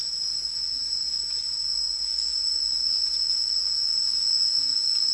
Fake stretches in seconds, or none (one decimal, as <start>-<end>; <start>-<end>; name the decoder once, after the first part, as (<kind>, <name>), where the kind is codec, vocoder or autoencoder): none

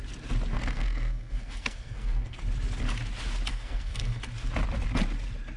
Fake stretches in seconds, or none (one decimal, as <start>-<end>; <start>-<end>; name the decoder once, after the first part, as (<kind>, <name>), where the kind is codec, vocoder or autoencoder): 0.5-2.4 (codec, SNAC); 3.5-4.2